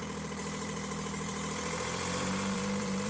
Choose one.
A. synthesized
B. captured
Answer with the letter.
A